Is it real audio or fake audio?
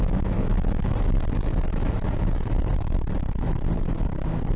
fake